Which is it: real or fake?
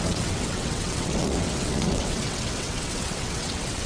fake